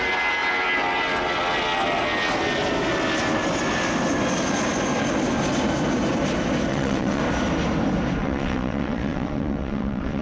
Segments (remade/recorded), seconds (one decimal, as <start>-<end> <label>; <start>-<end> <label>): 0.0-6.7 recorded; 6.7-7.2 remade; 7.2-8.2 recorded; 8.2-10.2 remade